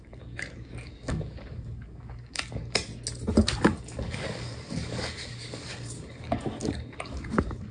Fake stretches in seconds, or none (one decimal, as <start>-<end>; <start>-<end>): 0.0-2.9; 3.4-7.7